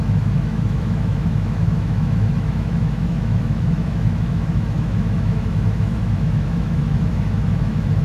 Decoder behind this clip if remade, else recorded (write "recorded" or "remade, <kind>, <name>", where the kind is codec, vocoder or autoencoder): remade, autoencoder, DAC-VAE